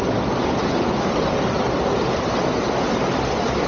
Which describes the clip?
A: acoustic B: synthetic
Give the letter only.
A